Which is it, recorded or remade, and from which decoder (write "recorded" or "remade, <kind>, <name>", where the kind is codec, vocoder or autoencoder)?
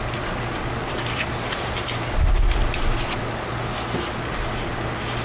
recorded